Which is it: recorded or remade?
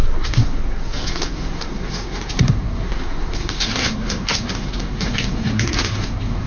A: remade